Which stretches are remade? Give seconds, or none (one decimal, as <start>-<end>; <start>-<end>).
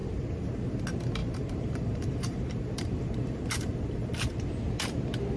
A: 1.2-4.4